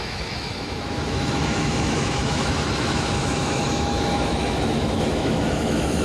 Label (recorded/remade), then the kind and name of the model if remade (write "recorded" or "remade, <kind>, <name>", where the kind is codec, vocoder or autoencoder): remade, autoencoder, DAC-VAE